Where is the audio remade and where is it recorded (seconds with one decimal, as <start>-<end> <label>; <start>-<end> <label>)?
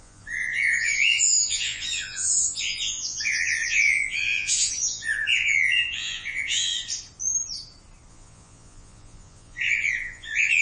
0.0-6.7 remade; 6.7-8.1 recorded; 8.1-10.6 remade